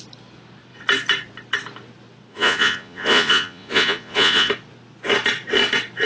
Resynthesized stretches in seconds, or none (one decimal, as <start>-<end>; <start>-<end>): 2.3-4.5